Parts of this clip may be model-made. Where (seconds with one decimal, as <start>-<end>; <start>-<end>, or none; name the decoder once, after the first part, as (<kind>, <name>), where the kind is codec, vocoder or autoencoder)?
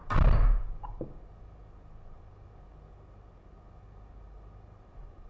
none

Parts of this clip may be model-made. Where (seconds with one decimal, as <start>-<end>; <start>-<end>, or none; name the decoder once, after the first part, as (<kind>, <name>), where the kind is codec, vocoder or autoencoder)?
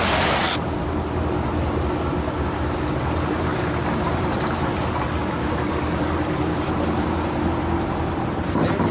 3.5-4.9 (vocoder, BigVGAN v2)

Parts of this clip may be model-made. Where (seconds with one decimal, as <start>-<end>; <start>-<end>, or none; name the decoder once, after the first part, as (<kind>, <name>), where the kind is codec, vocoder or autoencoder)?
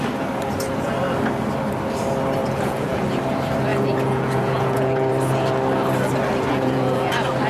2.4-3.0 (vocoder, Vocos); 3.7-5.1; 6.5-7.1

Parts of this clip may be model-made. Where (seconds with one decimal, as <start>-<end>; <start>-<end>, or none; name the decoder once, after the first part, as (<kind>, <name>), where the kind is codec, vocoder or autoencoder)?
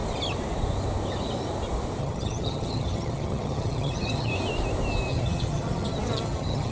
2.0-4.3 (vocoder, HiFi-GAN); 5.1-6.7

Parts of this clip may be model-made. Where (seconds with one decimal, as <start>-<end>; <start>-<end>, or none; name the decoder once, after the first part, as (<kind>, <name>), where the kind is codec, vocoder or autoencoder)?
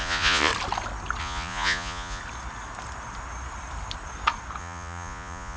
0.0-0.5 (vocoder, Vocos); 1.2-2.2; 4.6-5.6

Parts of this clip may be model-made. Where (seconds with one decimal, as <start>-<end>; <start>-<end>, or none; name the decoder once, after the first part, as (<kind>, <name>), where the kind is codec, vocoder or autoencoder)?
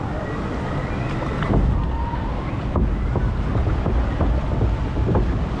none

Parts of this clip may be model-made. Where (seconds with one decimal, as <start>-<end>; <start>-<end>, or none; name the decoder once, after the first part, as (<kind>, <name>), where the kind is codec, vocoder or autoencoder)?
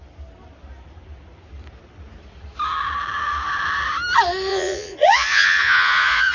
4.5-6.3 (vocoder, Vocos)